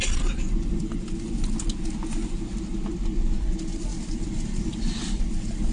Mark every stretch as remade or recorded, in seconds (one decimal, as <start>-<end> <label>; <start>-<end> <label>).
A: 0.0-5.7 recorded